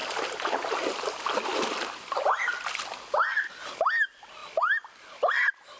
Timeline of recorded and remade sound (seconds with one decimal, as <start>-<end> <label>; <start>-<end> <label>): 0.0-5.8 recorded